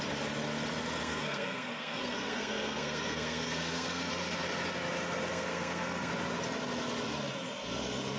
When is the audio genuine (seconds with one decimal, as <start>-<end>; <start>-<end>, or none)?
0.0-1.0; 4.1-5.3; 6.1-8.2